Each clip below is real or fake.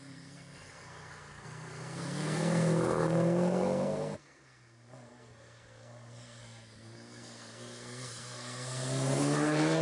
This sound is fake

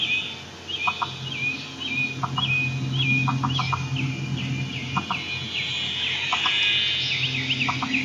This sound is real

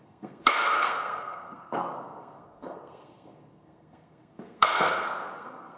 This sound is fake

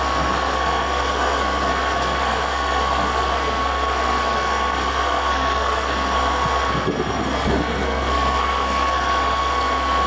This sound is fake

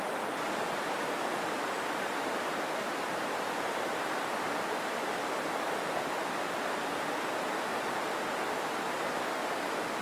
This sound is real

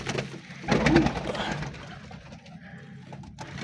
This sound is real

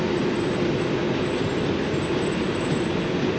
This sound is real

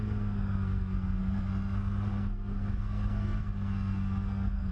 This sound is fake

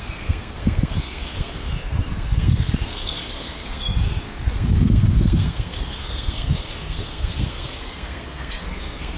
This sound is fake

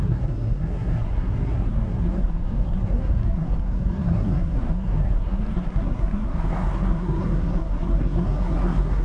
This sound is fake